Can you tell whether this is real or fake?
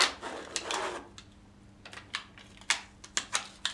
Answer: real